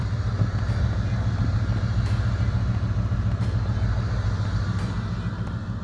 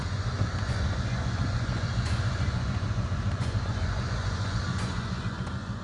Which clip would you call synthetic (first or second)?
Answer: second